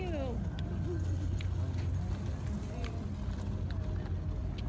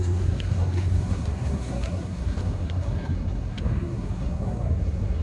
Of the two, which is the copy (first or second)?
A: second